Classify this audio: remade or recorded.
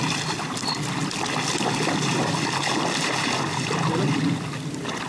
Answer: recorded